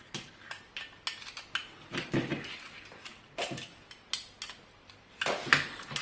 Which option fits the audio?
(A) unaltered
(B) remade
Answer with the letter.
A